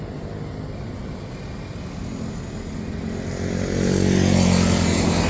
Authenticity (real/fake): real